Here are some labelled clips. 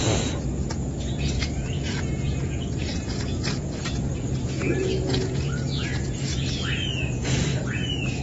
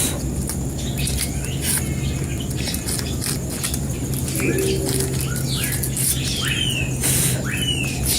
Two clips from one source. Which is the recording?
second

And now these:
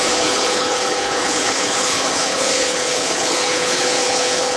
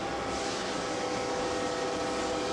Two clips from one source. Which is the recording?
second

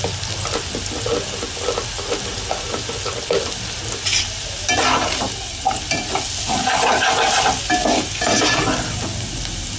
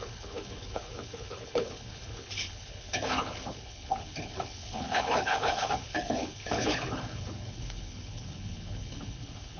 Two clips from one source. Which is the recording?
first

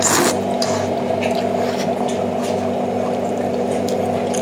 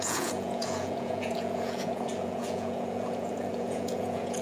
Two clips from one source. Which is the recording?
first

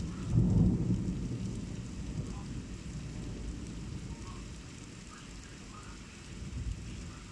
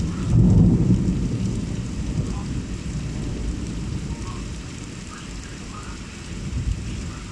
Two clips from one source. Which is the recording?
first